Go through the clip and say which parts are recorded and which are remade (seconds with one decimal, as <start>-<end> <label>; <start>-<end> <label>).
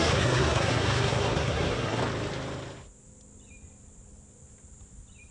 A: 0.0-2.0 remade; 2.0-5.3 recorded